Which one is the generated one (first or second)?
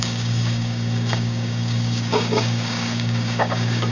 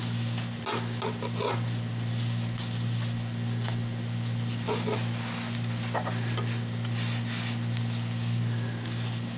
first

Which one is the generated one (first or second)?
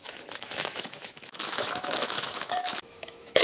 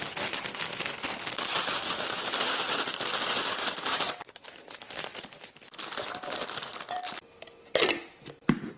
first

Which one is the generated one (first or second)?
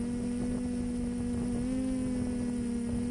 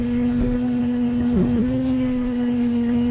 second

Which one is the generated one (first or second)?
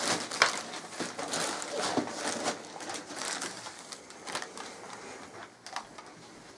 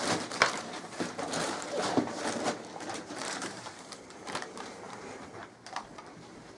second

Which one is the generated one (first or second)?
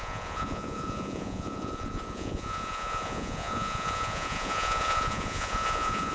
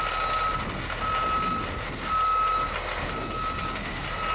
first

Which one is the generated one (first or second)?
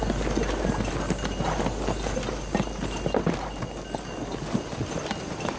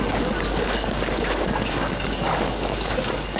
second